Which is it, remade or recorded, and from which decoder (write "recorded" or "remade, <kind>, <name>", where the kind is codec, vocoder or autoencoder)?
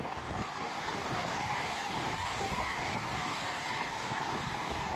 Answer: remade, codec, DAC